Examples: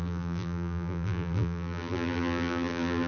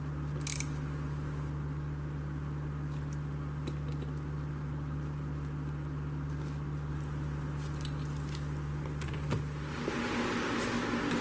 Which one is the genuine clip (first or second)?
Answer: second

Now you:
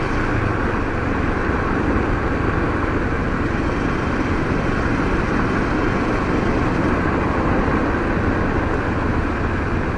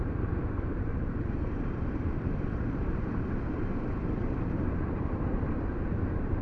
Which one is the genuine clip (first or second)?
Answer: first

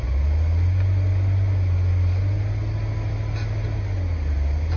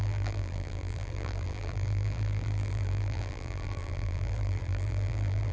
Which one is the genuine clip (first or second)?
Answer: first